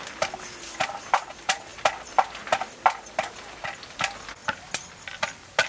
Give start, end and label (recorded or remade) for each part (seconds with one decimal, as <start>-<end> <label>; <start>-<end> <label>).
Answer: 0.0-5.7 recorded